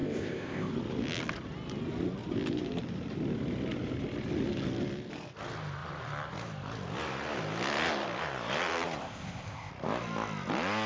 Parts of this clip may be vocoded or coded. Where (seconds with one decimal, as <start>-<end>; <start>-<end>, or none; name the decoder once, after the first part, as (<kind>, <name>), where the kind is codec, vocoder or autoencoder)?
0.0-0.7 (codec, ZipCodec); 9.0-9.7